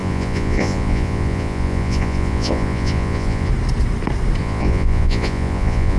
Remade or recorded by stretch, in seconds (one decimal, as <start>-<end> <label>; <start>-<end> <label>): 0.0-3.5 remade; 3.5-4.4 recorded; 4.4-6.0 remade